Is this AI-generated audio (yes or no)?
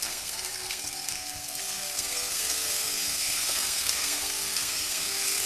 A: yes